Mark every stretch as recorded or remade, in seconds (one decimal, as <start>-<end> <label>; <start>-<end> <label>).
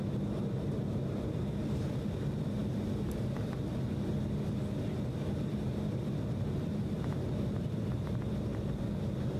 0.0-9.4 recorded